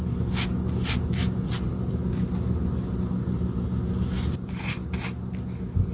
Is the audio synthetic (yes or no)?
no